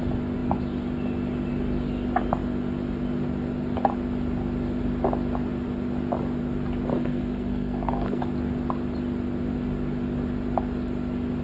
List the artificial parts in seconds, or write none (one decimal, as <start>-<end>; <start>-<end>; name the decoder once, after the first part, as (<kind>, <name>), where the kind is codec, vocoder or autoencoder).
6.9-8.2 (codec, SNAC)